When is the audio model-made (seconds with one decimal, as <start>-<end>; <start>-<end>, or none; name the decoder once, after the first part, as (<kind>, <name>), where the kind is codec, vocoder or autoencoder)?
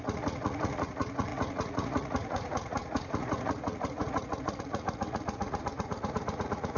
0.0-6.8 (vocoder, Vocos)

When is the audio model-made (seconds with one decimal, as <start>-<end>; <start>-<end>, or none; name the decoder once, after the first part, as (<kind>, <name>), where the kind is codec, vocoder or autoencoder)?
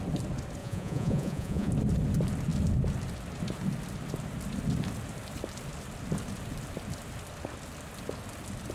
0.6-1.7 (vocoder, Vocos)